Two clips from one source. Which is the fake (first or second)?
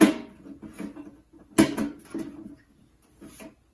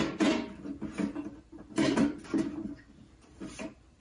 second